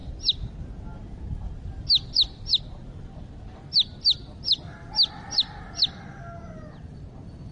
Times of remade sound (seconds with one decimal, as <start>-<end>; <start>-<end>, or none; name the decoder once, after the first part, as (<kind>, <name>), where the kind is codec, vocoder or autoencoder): none